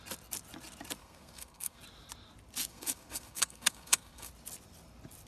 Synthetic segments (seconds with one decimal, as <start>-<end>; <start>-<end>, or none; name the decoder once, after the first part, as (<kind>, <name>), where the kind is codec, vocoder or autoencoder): 1.0-1.8 (codec, SNAC); 2.7-4.3